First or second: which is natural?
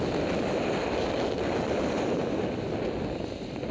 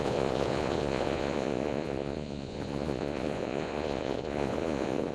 first